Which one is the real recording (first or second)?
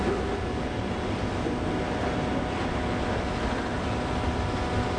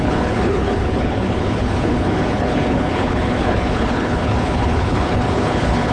first